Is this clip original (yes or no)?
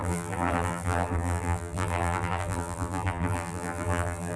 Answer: no